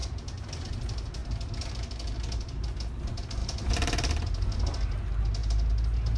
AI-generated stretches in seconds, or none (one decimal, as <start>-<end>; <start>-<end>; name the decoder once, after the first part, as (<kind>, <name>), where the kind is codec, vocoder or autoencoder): 3.4-4.1 (vocoder, BigVGAN v2)